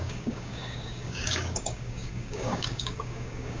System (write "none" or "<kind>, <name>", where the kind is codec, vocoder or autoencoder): codec, DAC